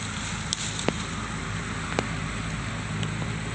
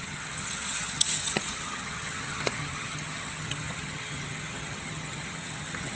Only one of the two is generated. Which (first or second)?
second